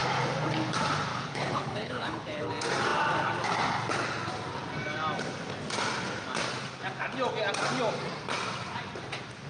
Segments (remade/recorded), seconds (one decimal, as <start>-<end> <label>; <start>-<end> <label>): 0.0-1.1 recorded; 1.1-2.5 remade; 2.5-9.5 recorded